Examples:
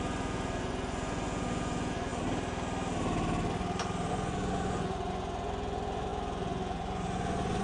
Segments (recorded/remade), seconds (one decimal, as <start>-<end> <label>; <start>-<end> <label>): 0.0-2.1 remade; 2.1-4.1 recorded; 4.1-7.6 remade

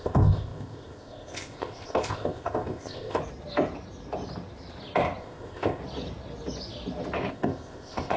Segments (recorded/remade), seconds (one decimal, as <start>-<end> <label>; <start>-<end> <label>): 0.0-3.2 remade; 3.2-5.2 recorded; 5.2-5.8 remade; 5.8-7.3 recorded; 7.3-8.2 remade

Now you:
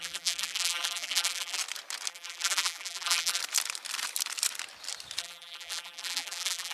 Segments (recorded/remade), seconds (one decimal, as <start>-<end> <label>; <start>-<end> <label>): 0.0-1.6 remade; 1.6-2.1 recorded; 2.1-3.4 remade; 3.4-5.2 recorded; 5.2-6.7 remade

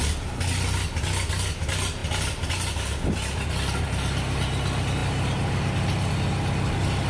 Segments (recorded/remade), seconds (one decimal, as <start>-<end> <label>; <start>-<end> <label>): 0.0-7.1 recorded

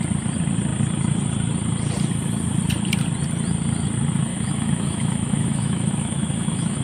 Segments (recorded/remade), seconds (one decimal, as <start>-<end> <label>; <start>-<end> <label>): 0.0-4.3 recorded; 4.3-6.8 remade

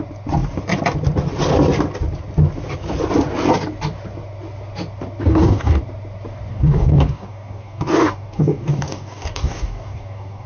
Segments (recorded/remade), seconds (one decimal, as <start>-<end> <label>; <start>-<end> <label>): 0.0-5.3 recorded; 5.3-5.8 remade; 5.8-6.5 recorded; 6.5-10.5 remade

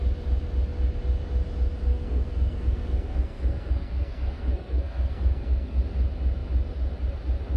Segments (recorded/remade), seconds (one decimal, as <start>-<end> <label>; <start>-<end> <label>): 0.0-1.9 recorded; 1.9-5.8 remade; 5.8-7.6 recorded